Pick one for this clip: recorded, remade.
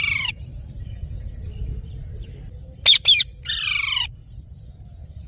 recorded